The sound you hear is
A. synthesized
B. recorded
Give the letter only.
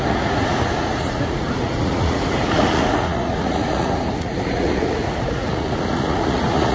A